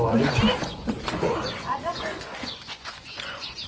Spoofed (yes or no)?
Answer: yes